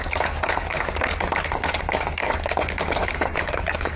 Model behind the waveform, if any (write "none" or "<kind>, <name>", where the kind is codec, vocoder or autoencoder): codec, DAC